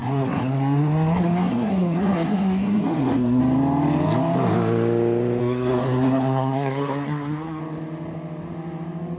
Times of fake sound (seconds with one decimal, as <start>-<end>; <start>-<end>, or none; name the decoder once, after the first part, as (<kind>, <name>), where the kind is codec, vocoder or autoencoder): 0.0-3.4 (codec, SNAC); 5.4-7.6